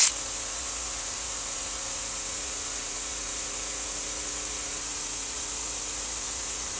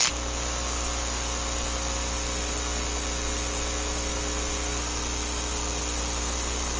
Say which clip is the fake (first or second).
first